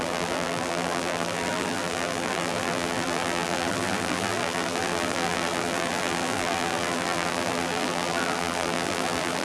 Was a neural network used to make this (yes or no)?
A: yes